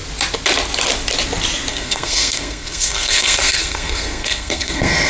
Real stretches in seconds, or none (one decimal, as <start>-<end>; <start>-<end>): 0.0-1.7